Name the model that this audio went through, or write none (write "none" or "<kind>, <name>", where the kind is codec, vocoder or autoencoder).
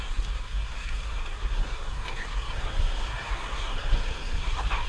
codec, SNAC